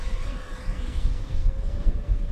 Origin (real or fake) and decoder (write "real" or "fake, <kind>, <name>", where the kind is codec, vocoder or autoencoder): fake, codec, SNAC